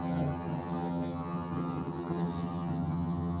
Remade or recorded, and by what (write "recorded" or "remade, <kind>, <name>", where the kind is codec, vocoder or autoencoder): remade, vocoder, HiFi-GAN